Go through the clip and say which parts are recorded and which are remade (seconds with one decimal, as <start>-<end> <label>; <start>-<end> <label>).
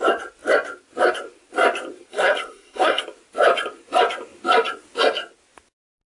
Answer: 0.0-2.1 recorded; 2.1-3.0 remade; 3.0-6.2 recorded